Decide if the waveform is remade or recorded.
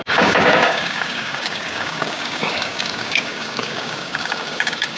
remade